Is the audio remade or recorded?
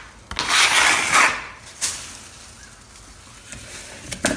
recorded